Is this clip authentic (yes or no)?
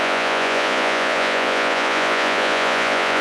no